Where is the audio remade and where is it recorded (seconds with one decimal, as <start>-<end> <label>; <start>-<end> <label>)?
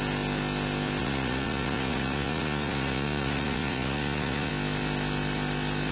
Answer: 0.0-1.0 recorded; 1.0-4.5 remade; 4.5-5.9 recorded